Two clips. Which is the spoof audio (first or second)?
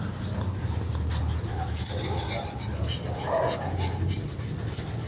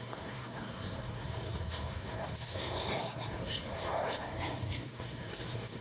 second